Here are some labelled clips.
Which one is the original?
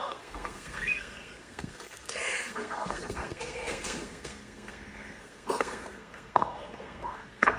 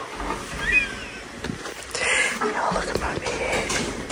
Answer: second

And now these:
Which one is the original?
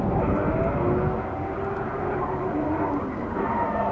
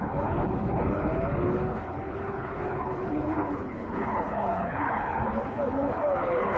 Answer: first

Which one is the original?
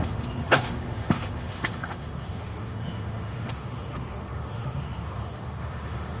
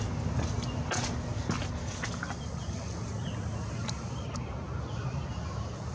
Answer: second